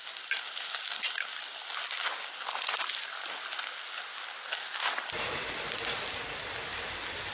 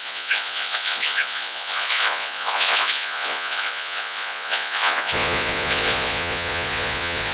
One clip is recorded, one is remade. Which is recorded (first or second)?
first